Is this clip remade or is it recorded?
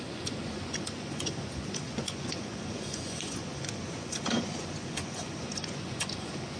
remade